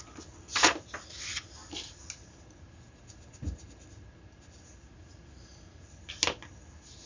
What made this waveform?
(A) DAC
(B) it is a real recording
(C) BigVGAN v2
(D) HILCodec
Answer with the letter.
B